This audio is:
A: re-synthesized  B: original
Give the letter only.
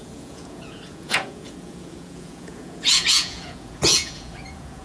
A